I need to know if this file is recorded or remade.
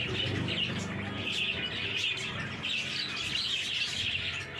recorded